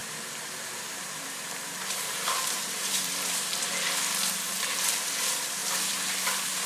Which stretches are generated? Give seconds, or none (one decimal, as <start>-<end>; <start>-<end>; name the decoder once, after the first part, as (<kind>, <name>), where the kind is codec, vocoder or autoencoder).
0.9-3.5 (vocoder, BigVGAN v2); 4.3-6.7